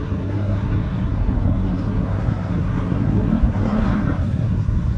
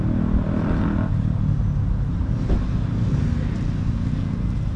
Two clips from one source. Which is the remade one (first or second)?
first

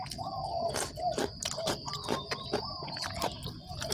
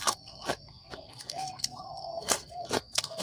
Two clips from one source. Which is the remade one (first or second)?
second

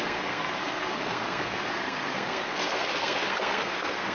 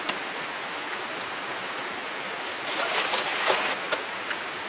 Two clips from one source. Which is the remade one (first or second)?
first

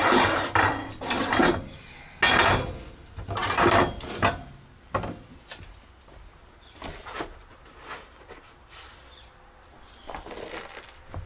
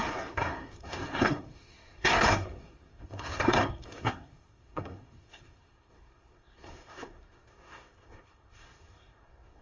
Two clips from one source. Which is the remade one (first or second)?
second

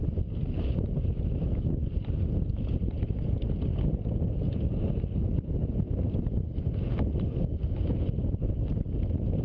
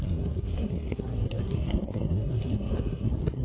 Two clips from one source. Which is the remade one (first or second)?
second